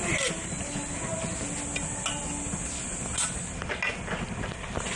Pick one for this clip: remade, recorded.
recorded